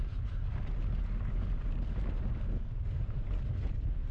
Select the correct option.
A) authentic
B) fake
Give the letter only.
A